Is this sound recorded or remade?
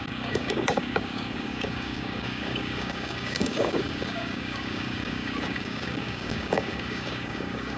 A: remade